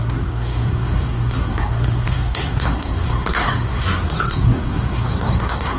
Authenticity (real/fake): fake